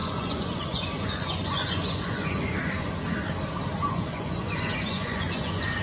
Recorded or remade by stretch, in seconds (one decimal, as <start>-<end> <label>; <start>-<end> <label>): 0.0-3.0 remade; 3.0-3.8 recorded; 3.8-5.8 remade